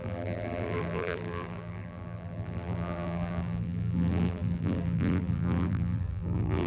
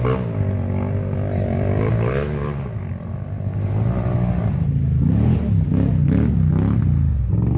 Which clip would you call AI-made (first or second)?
first